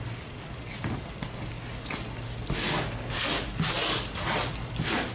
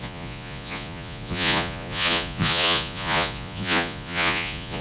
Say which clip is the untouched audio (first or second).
first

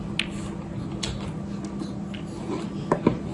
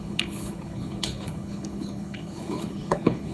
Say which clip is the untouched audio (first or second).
first